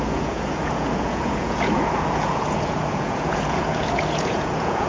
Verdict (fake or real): fake